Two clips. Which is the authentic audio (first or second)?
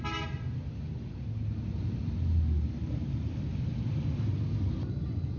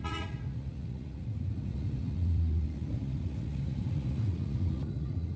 first